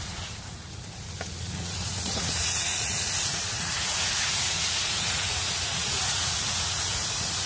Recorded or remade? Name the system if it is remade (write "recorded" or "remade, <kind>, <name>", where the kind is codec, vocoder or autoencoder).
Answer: remade, vocoder, Vocos